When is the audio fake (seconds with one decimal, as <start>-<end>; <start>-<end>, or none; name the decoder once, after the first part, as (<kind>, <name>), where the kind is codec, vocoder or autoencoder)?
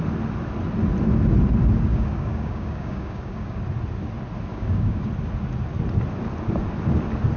1.9-3.6 (codec, DAC); 4.5-5.1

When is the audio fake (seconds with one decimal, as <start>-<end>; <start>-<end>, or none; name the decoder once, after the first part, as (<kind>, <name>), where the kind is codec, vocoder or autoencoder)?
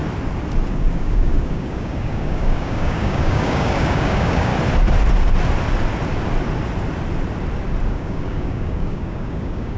0.7-4.5 (codec, DAC); 7.9-9.8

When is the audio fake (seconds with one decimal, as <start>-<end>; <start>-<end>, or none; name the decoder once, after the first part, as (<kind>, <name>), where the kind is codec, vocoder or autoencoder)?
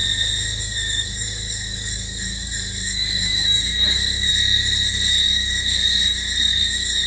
0.6-4.3 (codec, DAC); 4.9-7.1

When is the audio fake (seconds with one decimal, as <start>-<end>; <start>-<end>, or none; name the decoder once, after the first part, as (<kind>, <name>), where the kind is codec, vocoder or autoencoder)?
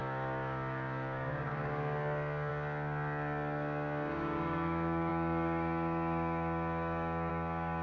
0.0-7.8 (codec, DAC)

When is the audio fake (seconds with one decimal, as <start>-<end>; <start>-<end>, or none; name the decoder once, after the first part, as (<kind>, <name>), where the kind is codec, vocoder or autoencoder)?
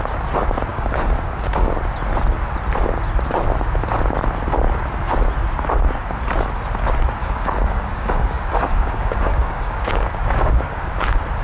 0.7-1.7 (codec, DAC); 7.2-10.9